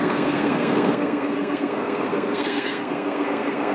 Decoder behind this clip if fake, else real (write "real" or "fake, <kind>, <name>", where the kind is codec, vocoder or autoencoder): fake, codec, SNAC